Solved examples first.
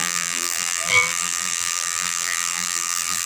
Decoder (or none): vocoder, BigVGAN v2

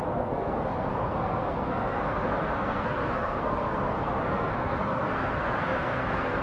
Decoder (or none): codec, SNAC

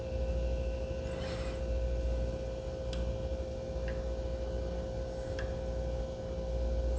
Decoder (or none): none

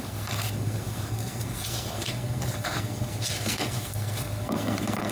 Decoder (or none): codec, SNAC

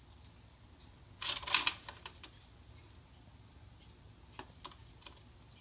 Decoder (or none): none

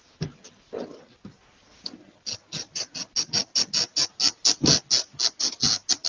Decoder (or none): none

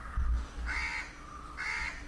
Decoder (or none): none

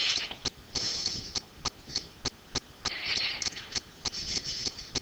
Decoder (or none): none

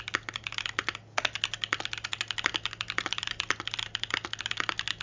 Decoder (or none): none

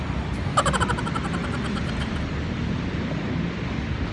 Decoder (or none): none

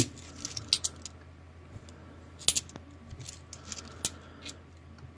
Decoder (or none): none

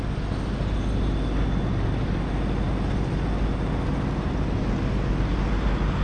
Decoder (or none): none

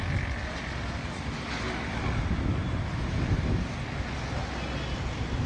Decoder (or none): none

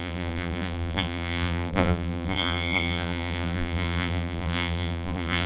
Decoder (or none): vocoder, BigVGAN v2